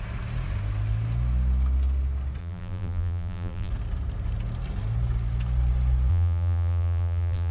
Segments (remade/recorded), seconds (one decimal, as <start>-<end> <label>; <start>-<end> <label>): 0.0-2.4 recorded; 2.4-3.7 remade; 3.7-6.1 recorded; 6.1-7.5 remade